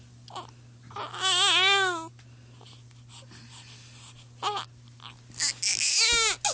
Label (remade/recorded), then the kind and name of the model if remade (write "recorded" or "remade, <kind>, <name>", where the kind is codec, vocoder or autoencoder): recorded